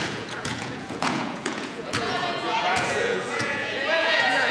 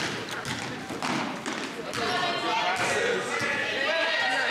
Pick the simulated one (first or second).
first